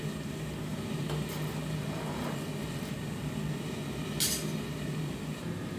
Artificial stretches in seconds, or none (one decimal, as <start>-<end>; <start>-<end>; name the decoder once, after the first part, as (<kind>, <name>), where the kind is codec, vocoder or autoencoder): none